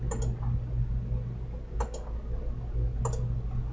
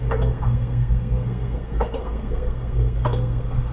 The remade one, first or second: second